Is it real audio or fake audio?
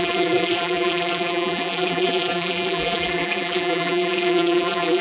fake